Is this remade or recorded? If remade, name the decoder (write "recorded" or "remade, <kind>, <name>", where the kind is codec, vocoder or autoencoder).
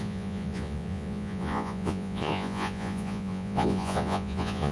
remade, vocoder, Vocos